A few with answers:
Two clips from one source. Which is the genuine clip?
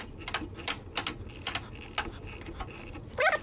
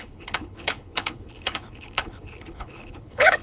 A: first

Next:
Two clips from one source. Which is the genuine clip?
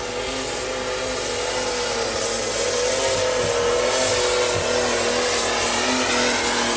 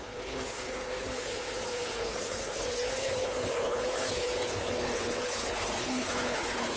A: first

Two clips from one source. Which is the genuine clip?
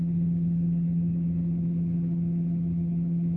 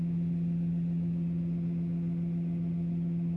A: second